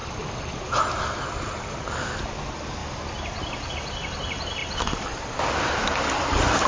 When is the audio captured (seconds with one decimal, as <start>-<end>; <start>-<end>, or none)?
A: 0.0-6.7